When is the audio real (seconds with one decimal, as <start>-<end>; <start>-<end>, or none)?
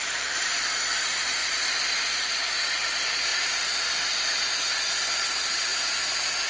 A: 0.6-1.4; 2.0-3.3; 3.9-5.7